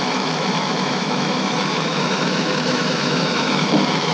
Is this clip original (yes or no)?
no